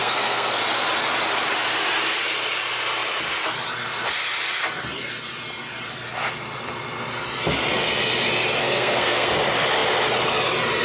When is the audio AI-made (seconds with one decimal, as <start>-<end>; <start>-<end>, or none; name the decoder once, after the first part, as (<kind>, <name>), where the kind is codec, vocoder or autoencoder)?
0.0-0.6 (codec, SNAC); 8.6-9.3

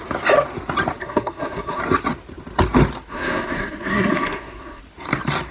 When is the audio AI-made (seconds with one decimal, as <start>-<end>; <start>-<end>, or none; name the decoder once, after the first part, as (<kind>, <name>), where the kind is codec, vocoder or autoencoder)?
1.0-1.8 (codec, SNAC); 3.1-4.8

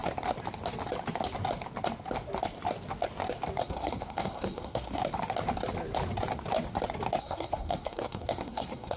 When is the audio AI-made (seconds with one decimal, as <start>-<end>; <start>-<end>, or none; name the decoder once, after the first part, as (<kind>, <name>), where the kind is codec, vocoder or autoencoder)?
3.6-5.0 (codec, SNAC); 7.2-9.0

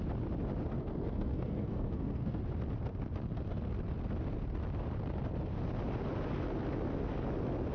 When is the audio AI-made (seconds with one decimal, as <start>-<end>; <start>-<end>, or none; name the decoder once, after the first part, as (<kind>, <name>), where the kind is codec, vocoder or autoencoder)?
0.7-2.4 (codec, SNAC)